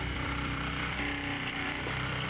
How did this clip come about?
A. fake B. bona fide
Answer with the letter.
A